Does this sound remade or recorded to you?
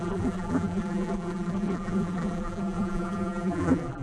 remade